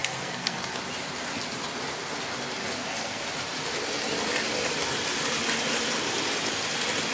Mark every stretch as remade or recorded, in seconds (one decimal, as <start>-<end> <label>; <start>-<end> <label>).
0.0-0.8 remade; 0.8-2.6 recorded; 2.6-3.2 remade; 3.2-7.1 recorded